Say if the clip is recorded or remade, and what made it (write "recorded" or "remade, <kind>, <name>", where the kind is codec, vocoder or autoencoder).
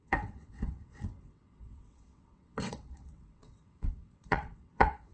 remade, vocoder, WaveNeXt